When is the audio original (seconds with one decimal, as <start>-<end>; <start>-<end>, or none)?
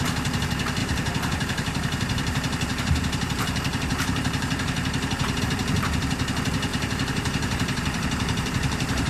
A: 0.0-0.8; 5.4-6.7